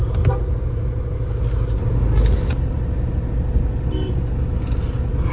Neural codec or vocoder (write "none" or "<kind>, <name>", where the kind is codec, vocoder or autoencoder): none